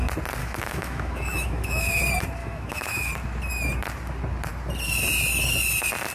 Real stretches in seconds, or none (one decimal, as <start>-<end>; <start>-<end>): 0.0-0.4; 2.0-2.4; 3.1-6.1